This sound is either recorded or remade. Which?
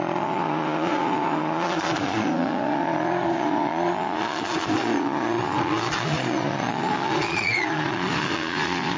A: remade